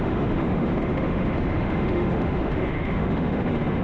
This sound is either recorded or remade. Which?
remade